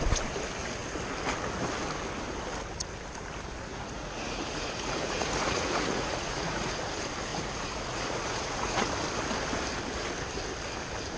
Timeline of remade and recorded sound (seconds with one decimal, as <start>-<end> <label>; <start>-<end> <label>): 0.0-3.7 recorded; 3.7-6.8 remade; 6.8-7.3 recorded; 7.3-8.9 remade; 8.9-11.2 recorded